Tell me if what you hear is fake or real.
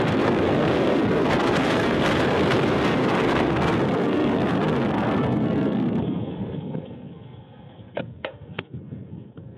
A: fake